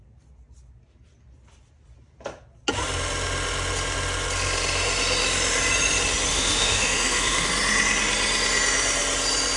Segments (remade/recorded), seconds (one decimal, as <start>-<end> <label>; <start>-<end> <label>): 0.0-6.3 recorded; 6.3-7.5 remade; 7.5-9.6 recorded

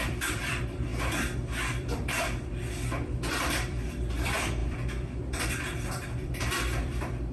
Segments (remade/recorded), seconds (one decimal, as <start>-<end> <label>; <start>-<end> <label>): 0.0-7.3 remade

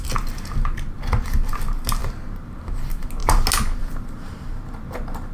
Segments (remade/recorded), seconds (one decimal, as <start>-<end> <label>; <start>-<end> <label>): 0.0-5.3 recorded

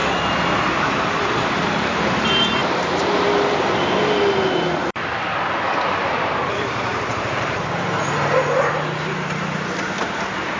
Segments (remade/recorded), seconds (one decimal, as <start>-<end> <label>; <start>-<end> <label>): 0.0-0.7 recorded; 0.7-2.6 remade; 2.6-6.0 recorded; 6.0-10.6 remade